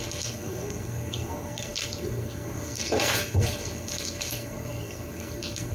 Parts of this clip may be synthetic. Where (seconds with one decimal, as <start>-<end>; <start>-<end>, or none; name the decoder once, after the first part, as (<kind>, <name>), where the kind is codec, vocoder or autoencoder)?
0.0-5.7 (codec, SNAC)

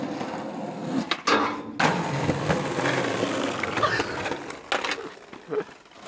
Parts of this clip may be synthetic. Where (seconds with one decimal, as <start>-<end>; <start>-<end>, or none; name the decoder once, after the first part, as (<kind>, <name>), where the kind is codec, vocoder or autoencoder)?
none

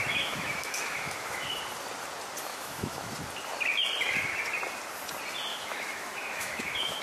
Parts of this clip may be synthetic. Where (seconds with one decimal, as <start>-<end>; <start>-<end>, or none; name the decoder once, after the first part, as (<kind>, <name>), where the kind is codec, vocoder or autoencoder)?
0.0-1.6 (autoencoder, DAC-VAE); 2.5-3.1; 5.5-7.0

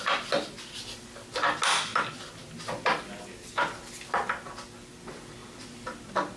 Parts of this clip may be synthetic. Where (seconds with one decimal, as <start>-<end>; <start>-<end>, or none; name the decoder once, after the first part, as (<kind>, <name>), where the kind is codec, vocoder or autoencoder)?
none

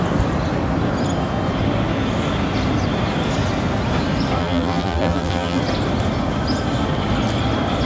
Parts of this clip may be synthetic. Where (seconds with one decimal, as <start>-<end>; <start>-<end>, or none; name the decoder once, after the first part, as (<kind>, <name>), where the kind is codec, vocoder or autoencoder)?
4.4-5.6 (vocoder, BigVGAN v2)

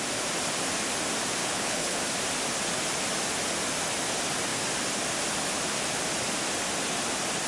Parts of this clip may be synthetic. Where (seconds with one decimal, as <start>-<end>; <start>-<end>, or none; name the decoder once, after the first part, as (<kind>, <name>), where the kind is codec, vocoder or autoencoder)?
1.4-2.0 (codec, HILCodec)